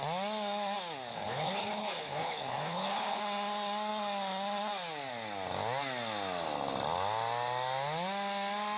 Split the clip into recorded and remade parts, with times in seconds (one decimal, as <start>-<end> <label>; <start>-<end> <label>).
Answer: 0.0-1.1 recorded; 1.1-3.2 remade; 3.2-8.8 recorded